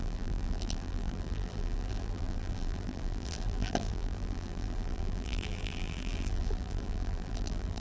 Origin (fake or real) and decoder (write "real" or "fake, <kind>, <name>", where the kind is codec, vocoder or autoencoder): fake, vocoder, BigVGAN v2